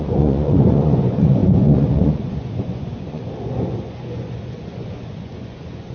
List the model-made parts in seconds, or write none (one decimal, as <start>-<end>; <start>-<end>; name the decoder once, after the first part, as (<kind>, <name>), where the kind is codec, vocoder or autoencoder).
0.0-5.9 (vocoder, Vocos)